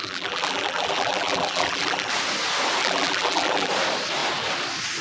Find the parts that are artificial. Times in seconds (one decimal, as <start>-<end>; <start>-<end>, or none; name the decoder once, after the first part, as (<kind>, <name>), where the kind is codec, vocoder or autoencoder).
0.0-2.1 (vocoder, BigVGAN v2); 2.8-3.7